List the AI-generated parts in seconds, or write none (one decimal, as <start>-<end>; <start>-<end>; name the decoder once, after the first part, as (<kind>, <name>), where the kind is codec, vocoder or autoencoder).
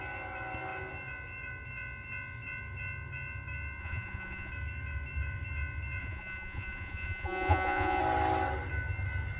3.8-4.5 (vocoder, Vocos); 6.0-8.0